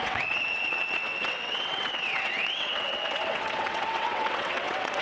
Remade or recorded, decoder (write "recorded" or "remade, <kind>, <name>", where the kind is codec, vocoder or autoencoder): remade, vocoder, WaveNeXt